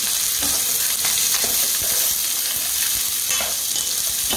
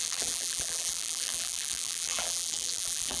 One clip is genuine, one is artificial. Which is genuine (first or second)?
first